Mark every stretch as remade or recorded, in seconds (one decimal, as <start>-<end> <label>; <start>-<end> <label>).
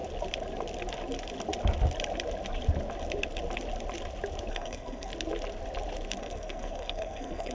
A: 0.0-4.5 recorded; 4.5-5.1 remade; 5.1-6.2 recorded; 6.2-7.5 remade